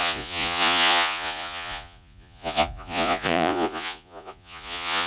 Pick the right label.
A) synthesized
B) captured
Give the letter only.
A